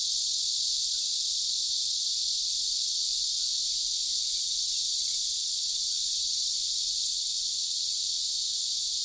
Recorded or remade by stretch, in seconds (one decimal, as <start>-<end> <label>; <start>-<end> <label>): 0.0-4.3 recorded; 4.3-8.0 remade; 8.0-9.0 recorded